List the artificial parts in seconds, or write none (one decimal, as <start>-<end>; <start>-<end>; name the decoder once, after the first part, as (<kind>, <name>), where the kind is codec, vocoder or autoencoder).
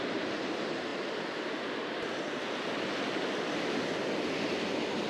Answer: none